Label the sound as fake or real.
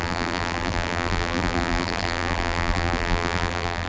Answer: fake